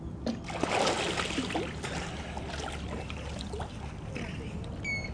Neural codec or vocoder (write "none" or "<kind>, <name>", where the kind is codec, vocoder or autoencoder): none